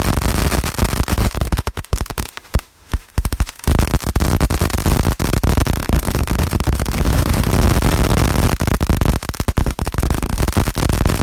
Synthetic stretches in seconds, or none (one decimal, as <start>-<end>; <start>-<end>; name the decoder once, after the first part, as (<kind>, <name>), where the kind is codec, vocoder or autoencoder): 1.1-3.7 (autoencoder, DAC-VAE); 5.8-7.5; 9.6-10.4